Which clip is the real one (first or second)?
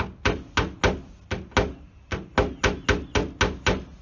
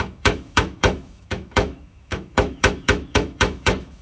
first